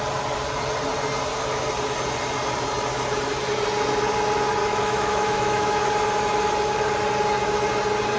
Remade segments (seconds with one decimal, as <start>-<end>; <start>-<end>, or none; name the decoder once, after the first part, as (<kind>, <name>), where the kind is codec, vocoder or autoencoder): 4.6-5.8 (autoencoder, DAC-VAE)